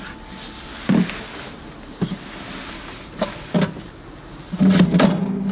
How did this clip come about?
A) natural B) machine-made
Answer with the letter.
A